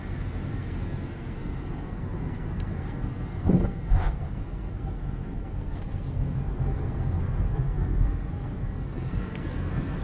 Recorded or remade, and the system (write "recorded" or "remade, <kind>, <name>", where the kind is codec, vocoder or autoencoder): remade, codec, SNAC